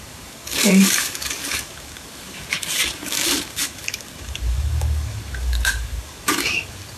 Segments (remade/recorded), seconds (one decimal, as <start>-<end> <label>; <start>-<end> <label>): 0.0-7.0 remade